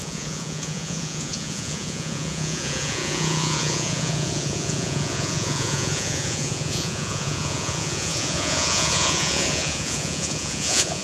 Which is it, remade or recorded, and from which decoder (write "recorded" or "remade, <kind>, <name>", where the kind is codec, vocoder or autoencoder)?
remade, vocoder, Vocos